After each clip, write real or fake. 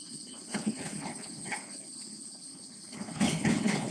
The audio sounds fake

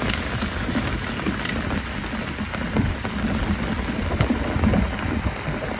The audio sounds real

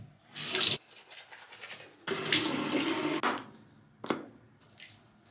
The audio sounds real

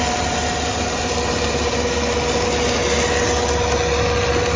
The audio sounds real